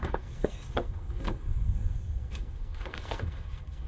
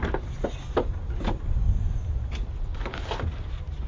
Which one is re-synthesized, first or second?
first